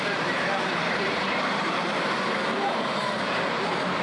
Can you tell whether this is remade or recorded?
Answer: remade